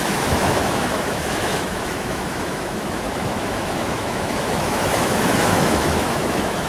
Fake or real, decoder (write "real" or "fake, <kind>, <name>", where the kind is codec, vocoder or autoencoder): fake, autoencoder, DAC-VAE